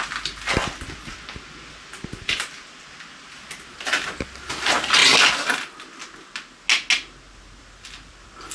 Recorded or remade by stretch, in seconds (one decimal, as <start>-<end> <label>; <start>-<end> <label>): 0.0-8.5 recorded